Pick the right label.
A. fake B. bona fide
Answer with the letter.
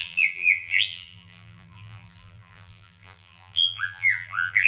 A